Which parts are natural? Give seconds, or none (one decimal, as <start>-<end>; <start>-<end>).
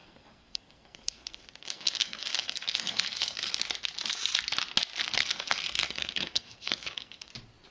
3.6-5.2; 7.3-7.7